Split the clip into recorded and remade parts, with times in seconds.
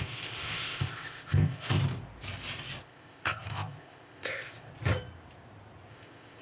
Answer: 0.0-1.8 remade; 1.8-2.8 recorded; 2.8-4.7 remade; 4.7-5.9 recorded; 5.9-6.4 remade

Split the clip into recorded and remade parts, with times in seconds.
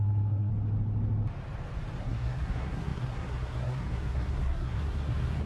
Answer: 0.0-0.5 remade; 0.5-2.0 recorded; 2.0-5.5 remade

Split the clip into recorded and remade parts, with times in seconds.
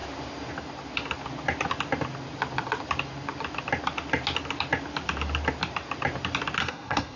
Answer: 0.0-6.6 recorded; 6.6-7.2 remade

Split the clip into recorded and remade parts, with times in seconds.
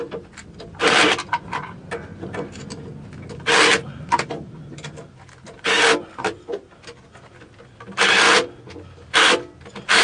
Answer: 0.0-10.0 recorded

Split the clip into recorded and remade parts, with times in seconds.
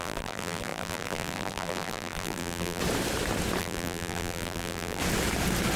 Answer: 0.0-2.8 remade; 2.8-3.6 recorded; 3.6-5.0 remade; 5.0-5.8 recorded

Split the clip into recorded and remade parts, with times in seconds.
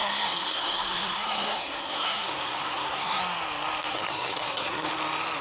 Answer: 0.0-3.2 remade; 3.2-3.9 recorded; 3.9-4.9 remade; 4.9-5.4 recorded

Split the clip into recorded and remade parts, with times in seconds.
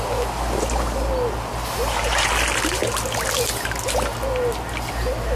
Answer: 0.0-5.4 recorded